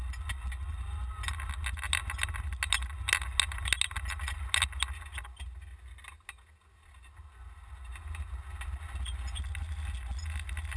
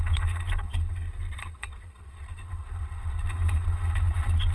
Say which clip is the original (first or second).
first